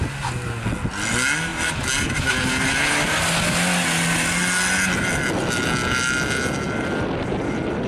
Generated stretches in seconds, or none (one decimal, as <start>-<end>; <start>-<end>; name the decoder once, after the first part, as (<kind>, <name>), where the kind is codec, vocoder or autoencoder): none